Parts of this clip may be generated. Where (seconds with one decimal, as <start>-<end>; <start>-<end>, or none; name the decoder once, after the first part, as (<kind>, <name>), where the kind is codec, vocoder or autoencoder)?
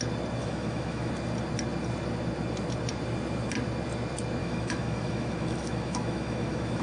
0.4-1.1 (autoencoder, DAC-VAE); 4.4-6.8